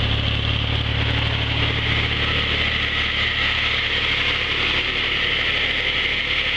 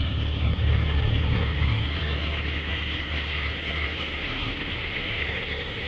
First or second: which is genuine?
first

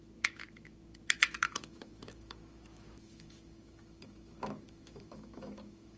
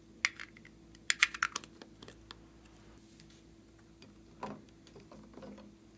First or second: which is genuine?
second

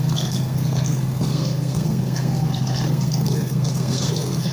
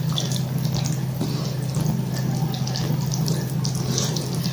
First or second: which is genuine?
second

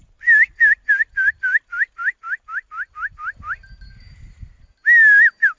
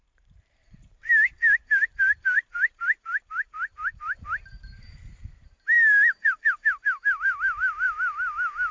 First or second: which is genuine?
first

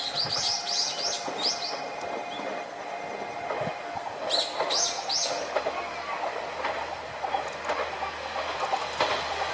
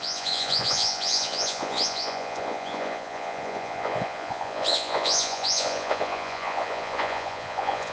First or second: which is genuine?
first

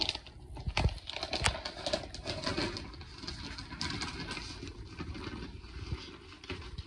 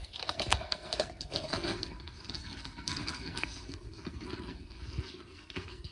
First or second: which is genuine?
first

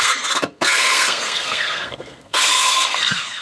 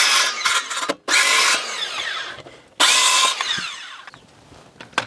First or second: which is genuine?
second